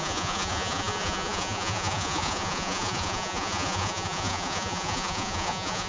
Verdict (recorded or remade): remade